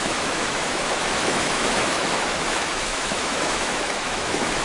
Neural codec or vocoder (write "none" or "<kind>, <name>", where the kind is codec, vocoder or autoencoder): autoencoder, DAC-VAE